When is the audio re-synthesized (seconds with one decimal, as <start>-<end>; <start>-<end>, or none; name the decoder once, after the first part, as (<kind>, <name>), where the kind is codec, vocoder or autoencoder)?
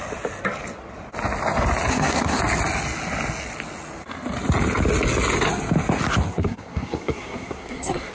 1.9-2.4 (codec, SNAC); 6.3-8.1